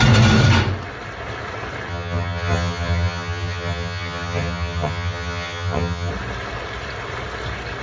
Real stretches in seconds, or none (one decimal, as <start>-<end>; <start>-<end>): 0.0-1.9; 6.1-7.8